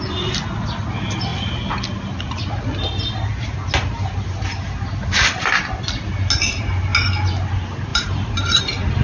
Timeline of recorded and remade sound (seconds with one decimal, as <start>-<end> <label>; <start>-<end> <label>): 0.0-7.9 recorded; 7.9-8.6 remade; 8.6-9.0 recorded